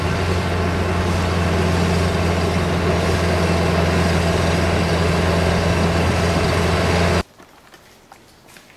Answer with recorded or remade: recorded